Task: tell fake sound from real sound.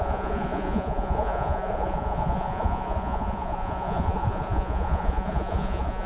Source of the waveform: fake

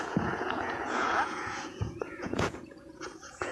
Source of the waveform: fake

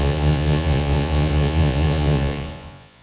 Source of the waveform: fake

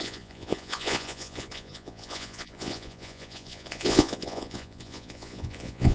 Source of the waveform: fake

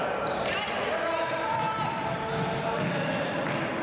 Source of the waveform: real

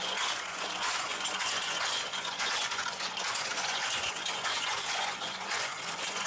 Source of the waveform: fake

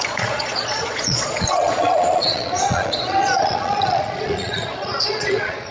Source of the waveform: fake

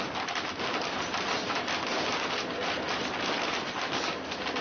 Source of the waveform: real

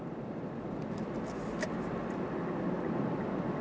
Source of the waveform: real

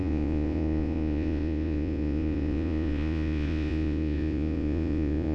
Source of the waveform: fake